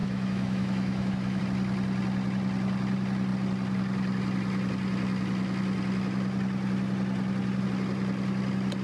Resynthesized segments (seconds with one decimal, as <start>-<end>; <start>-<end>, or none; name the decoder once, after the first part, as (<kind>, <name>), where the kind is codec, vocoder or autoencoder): 0.0-1.4 (autoencoder, DAC-VAE)